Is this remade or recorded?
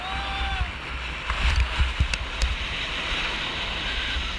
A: recorded